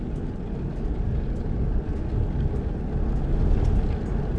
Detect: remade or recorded recorded